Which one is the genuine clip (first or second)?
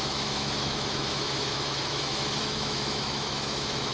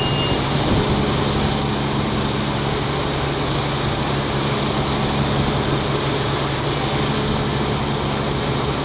second